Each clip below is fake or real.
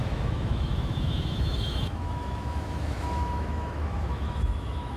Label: fake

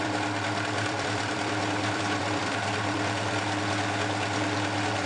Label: fake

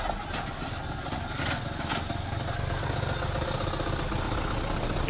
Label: real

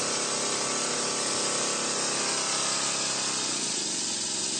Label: real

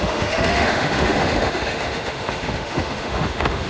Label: fake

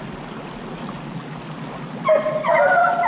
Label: real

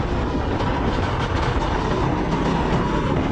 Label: real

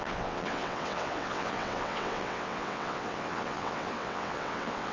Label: fake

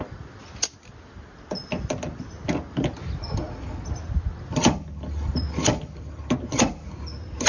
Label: real